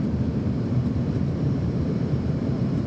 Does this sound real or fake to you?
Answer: fake